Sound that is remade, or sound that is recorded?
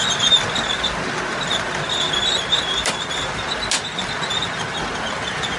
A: recorded